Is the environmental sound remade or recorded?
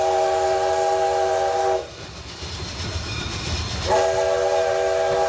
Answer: recorded